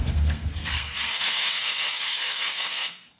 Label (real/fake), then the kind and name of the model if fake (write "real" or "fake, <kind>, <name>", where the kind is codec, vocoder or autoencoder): fake, codec, SNAC